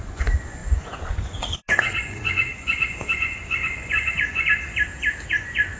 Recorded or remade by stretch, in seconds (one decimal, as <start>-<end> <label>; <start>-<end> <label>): 0.0-4.5 remade; 4.5-5.3 recorded; 5.3-5.8 remade